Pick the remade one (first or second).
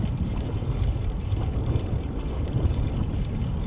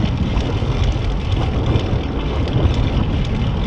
first